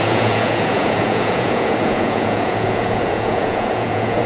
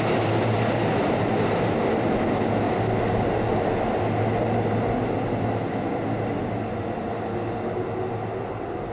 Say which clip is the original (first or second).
second